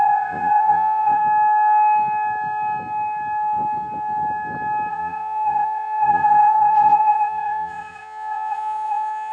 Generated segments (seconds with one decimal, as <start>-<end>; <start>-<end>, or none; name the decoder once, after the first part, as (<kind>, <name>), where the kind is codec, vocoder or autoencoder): 0.0-1.2 (vocoder, Vocos); 4.9-9.3